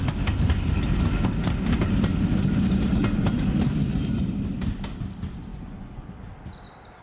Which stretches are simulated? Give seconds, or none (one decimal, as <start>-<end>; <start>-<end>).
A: 5.5-6.1